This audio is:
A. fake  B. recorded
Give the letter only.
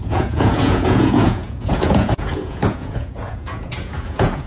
A